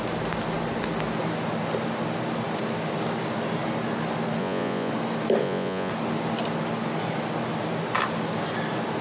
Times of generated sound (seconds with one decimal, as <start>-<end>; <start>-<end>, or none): 4.4-4.9; 5.4-5.9